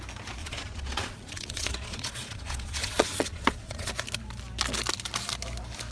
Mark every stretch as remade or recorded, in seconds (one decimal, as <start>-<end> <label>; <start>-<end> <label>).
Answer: 0.0-0.4 recorded; 0.4-3.9 remade; 3.9-5.9 recorded